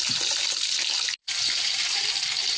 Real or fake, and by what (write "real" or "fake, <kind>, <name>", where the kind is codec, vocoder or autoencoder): real